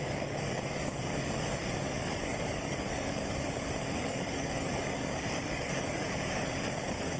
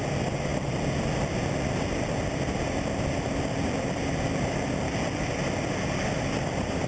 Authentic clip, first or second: second